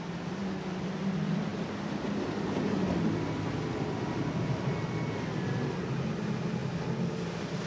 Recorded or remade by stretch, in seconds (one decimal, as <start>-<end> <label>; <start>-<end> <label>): 0.0-7.7 recorded